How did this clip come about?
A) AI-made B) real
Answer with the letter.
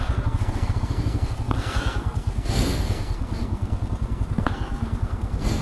A